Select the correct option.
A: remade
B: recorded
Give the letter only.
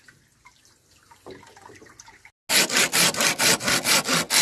B